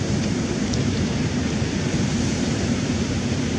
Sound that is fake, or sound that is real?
fake